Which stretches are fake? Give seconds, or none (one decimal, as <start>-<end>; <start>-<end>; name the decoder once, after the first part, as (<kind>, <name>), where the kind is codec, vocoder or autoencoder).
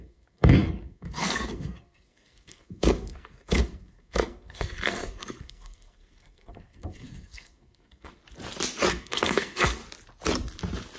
0.0-8.2 (codec, SNAC); 8.9-9.8